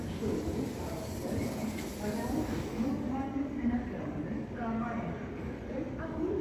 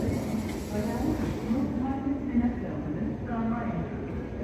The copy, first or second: first